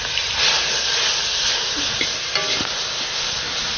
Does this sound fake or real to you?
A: real